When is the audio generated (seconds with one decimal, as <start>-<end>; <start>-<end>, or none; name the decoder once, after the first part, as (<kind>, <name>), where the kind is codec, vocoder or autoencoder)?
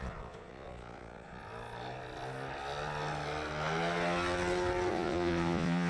0.0-1.4 (vocoder, Vocos); 4.9-5.9